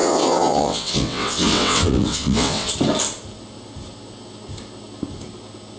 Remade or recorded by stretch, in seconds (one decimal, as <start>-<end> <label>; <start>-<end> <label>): 0.0-2.7 remade; 2.7-5.8 recorded

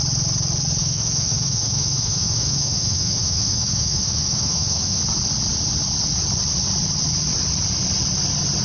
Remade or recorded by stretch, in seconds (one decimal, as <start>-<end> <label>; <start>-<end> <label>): 0.0-0.8 recorded; 0.8-5.0 remade; 5.0-8.6 recorded

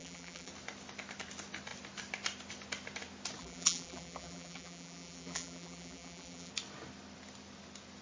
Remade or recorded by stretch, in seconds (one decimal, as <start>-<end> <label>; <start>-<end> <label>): 0.0-0.5 remade; 0.5-3.4 recorded; 3.4-6.5 remade; 6.5-8.0 recorded

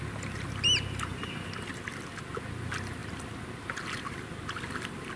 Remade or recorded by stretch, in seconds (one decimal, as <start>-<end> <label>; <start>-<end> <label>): 0.0-1.1 recorded; 1.1-1.8 remade; 1.8-5.2 recorded

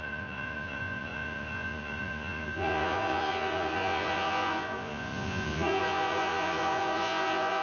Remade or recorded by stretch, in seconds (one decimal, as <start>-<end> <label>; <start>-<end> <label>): 0.0-7.6 remade

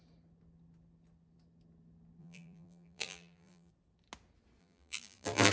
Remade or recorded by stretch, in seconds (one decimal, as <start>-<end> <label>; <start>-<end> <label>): 0.0-2.2 recorded; 2.2-3.7 remade; 3.7-4.6 recorded; 4.6-5.5 remade